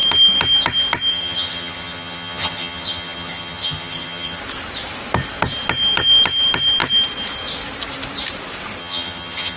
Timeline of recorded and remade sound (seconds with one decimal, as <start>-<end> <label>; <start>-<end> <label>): 0.0-1.1 recorded; 1.1-4.4 remade; 4.4-8.8 recorded; 8.8-9.6 remade